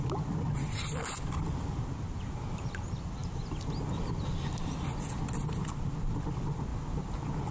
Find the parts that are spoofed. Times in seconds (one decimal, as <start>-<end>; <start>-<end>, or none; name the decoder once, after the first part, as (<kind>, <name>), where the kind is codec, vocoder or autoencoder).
none